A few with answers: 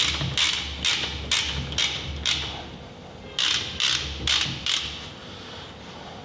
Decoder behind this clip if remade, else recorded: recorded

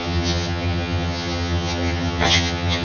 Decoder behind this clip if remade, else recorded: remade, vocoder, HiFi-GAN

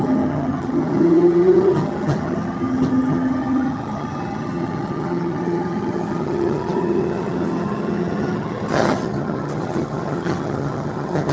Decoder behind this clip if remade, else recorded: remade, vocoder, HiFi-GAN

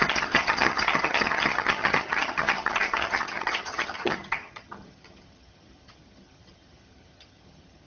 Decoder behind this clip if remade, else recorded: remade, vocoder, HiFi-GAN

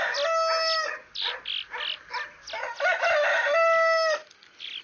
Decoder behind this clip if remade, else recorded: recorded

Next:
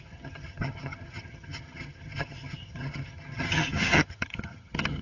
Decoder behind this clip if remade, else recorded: remade, vocoder, HiFi-GAN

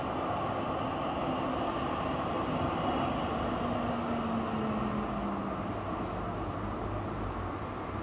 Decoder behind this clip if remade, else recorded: recorded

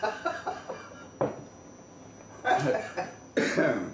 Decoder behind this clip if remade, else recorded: recorded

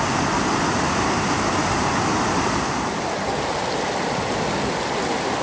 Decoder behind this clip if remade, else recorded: recorded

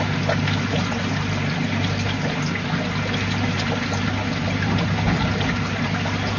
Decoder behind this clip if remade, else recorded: recorded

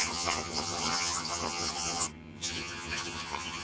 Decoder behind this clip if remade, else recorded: remade, vocoder, HiFi-GAN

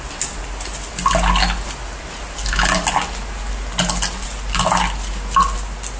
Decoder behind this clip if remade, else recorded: recorded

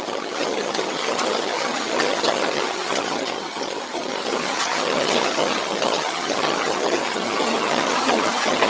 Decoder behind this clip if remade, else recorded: remade, vocoder, HiFi-GAN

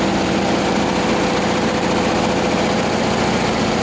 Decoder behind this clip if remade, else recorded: recorded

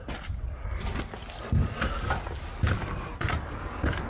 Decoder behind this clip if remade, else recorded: recorded